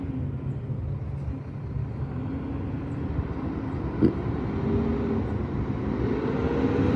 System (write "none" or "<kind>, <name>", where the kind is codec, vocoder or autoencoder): none